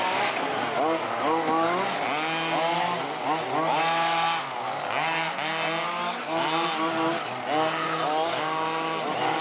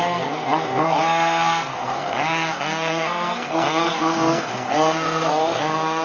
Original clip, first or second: first